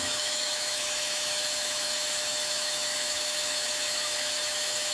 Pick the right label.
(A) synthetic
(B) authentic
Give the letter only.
A